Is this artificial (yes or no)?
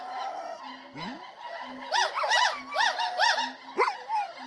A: no